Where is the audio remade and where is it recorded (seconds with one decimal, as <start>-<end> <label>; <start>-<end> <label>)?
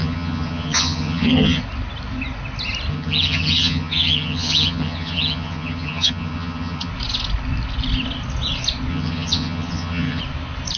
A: 0.0-1.6 remade; 1.6-2.9 recorded; 2.9-6.9 remade; 6.9-8.9 recorded; 8.9-10.2 remade; 10.2-10.8 recorded